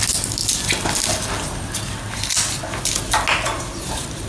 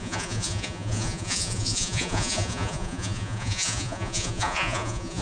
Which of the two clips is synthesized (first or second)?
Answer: second